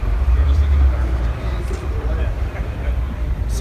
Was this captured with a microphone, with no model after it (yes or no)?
no